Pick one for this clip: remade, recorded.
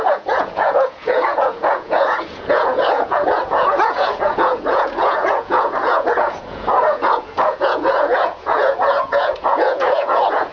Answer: remade